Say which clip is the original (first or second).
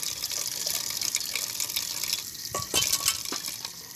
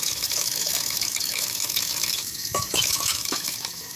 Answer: first